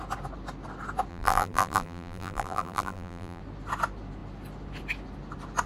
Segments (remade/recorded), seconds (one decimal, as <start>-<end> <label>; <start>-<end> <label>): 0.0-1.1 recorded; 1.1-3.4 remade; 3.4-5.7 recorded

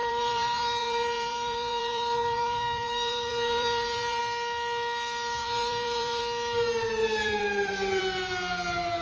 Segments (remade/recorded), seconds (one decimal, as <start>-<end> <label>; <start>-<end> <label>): 0.0-4.2 remade; 4.2-5.4 recorded; 5.4-6.2 remade; 6.2-7.0 recorded; 7.0-8.0 remade; 8.0-9.0 recorded

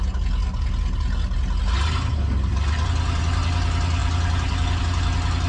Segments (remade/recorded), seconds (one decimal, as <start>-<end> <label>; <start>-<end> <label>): 0.0-4.0 recorded; 4.0-4.8 remade; 4.8-5.5 recorded